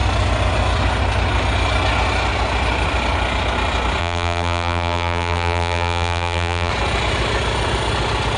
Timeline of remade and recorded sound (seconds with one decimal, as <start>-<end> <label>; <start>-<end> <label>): 0.0-4.0 recorded; 4.0-6.7 remade; 6.7-8.4 recorded